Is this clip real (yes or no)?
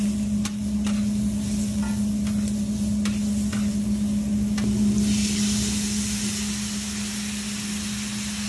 yes